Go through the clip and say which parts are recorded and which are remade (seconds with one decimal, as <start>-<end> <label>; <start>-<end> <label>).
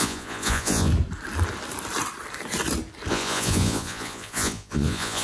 0.0-0.9 remade; 0.9-3.1 recorded; 3.1-5.2 remade